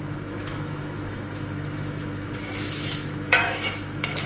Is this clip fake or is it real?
fake